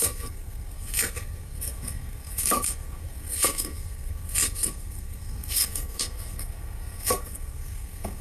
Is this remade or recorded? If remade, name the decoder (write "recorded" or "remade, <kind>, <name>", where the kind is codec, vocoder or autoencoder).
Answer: remade, codec, SNAC